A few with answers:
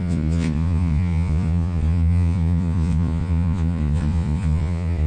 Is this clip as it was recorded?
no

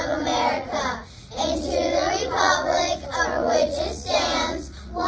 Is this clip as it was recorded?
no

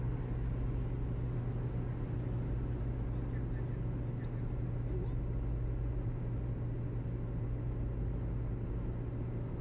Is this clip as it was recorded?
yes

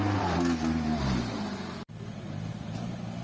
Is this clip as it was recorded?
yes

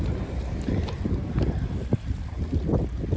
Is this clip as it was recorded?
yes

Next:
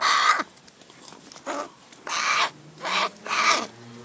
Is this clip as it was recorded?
yes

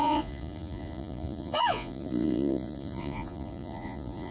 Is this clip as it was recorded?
no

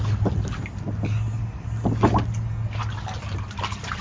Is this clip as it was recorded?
yes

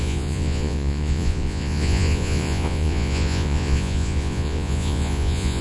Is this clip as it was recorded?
no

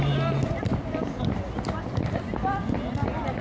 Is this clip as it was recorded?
yes